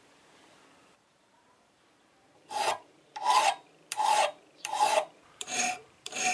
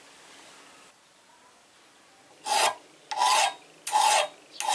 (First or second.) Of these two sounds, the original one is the second